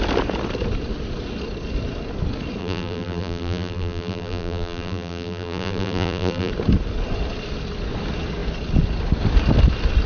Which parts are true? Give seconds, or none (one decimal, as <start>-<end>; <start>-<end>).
0.0-2.6; 6.5-10.1